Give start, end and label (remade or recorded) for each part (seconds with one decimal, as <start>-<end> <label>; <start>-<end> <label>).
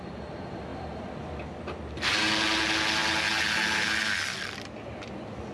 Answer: 0.0-5.5 recorded